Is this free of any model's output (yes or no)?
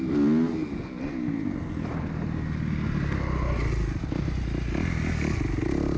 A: yes